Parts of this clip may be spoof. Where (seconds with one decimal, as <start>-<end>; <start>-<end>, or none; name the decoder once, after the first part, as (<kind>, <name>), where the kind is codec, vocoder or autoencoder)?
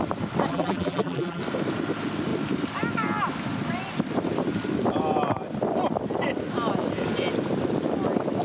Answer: 0.5-1.4 (vocoder, BigVGAN v2)